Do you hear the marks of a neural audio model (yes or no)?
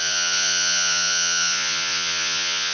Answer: yes